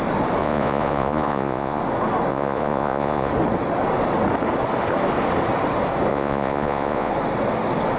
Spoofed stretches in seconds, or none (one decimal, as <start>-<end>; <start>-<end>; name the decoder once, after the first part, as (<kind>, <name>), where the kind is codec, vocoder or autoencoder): 0.4-1.8 (vocoder, Vocos); 2.3-3.3; 6.1-7.1